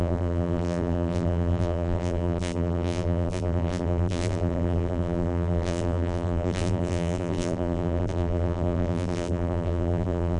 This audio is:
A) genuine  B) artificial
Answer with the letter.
B